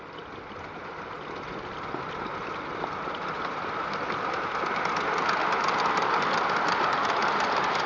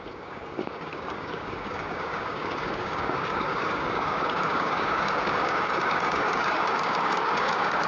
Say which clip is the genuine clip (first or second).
first